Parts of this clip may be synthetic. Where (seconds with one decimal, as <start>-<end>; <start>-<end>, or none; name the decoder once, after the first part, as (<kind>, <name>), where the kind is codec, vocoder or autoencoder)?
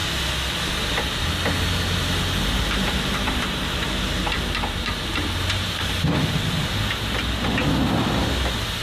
2.4-6.1 (vocoder, BigVGAN v2)